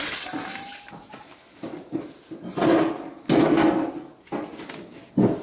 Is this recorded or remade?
recorded